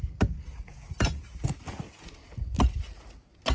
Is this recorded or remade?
recorded